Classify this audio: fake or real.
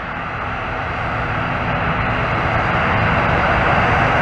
real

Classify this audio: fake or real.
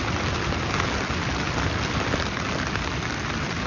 real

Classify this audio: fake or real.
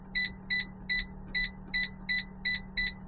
real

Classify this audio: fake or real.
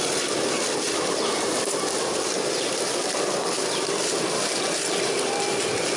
real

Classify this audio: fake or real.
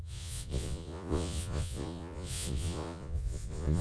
fake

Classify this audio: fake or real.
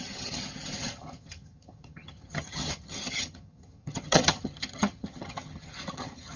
fake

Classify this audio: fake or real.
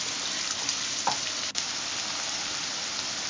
fake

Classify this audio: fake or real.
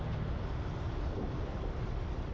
real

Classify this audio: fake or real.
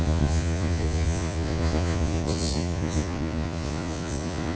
fake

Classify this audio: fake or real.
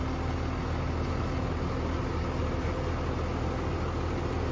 real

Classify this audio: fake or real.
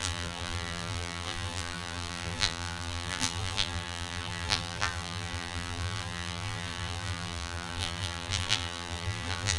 fake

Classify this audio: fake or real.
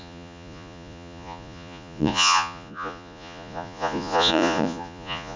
fake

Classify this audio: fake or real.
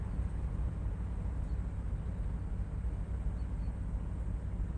real